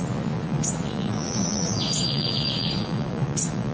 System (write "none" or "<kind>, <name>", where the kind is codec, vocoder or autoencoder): vocoder, Vocos